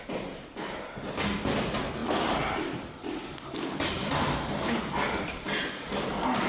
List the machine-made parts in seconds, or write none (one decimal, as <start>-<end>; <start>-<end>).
none